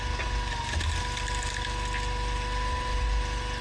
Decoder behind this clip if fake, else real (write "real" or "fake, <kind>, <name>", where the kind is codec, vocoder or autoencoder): real